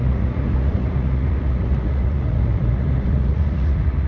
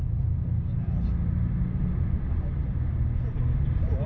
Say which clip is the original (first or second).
second